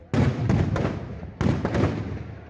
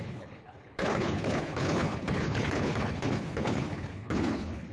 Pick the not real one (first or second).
second